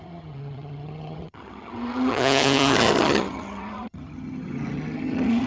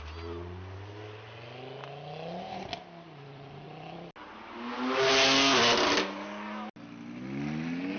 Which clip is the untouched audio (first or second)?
second